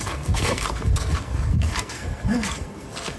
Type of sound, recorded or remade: remade